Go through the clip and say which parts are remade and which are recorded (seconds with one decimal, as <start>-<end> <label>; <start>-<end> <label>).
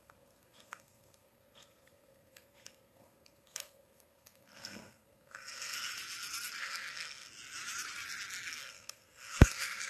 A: 0.0-5.9 remade; 5.9-6.6 recorded; 6.6-7.3 remade; 7.3-8.6 recorded; 8.6-9.9 remade